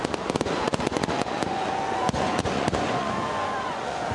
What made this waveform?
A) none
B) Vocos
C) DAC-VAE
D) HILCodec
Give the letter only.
B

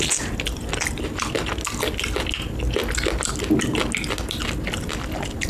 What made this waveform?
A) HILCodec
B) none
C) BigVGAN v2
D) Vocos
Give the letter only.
B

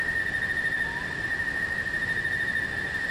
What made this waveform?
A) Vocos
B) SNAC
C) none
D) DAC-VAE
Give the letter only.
C